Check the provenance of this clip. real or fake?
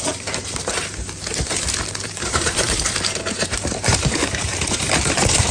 fake